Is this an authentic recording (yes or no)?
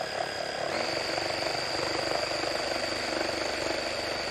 yes